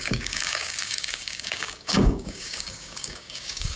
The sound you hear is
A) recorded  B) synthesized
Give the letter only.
B